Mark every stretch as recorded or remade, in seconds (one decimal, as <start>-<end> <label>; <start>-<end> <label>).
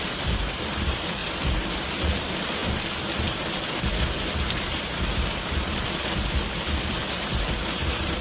0.0-1.2 remade; 1.2-2.2 recorded; 2.2-2.6 remade; 2.6-7.4 recorded; 7.4-8.2 remade